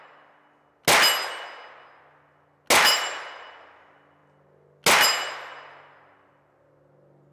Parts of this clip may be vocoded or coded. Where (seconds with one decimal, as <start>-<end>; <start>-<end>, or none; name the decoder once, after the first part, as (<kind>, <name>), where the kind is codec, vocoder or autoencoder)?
none